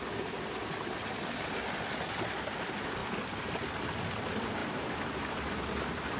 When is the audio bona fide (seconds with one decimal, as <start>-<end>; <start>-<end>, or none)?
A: 0.0-3.0; 3.6-4.6